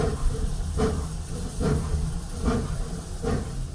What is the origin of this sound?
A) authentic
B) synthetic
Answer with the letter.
A